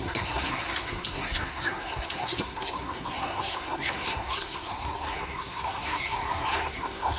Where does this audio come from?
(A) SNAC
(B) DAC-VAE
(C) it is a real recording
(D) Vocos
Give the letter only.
A